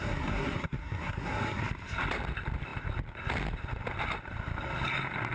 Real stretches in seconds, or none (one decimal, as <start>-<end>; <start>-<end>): 1.6-5.3